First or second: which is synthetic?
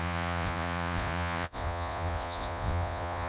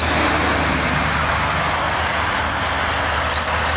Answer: first